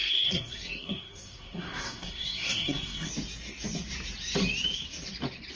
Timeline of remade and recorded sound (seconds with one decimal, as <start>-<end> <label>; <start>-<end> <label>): 0.0-3.1 remade; 3.1-5.6 recorded